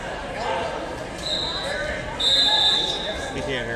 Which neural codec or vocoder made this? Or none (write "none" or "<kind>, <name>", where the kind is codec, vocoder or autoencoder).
none